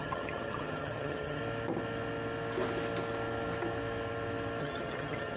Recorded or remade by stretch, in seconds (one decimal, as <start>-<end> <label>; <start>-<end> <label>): 0.0-1.4 remade; 1.4-4.6 recorded; 4.6-5.4 remade